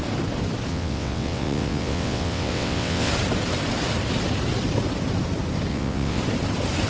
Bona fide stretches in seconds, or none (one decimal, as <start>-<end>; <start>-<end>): 0.0-0.7; 3.1-5.7; 6.2-6.9